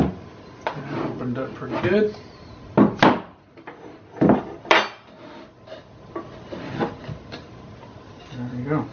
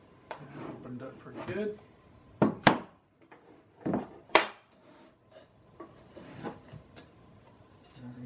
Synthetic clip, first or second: second